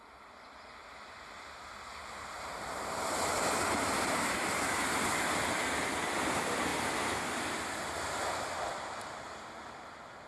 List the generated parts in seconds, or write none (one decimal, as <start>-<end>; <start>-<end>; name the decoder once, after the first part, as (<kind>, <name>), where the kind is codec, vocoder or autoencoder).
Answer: none